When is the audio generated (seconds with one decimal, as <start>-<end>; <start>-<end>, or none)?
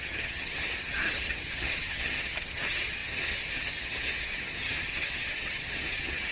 0.0-6.3